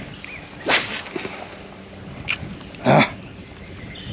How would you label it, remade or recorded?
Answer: recorded